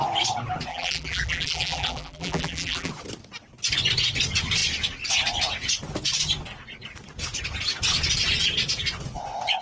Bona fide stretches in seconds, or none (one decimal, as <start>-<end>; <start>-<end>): 0.0-0.7; 2.9-9.6